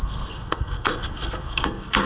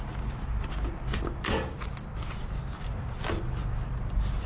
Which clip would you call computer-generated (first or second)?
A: first